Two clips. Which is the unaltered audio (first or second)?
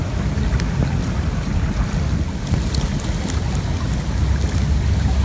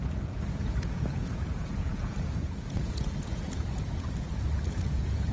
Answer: first